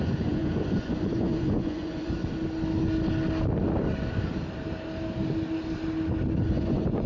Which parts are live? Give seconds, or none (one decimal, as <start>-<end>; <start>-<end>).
2.2-6.5